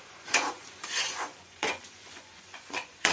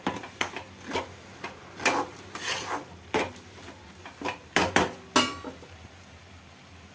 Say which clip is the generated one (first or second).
first